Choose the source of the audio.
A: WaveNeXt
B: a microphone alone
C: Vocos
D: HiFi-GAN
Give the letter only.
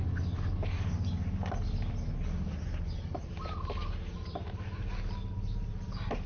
B